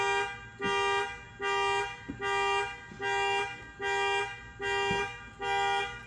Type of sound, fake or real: real